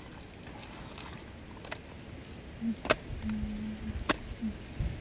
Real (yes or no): yes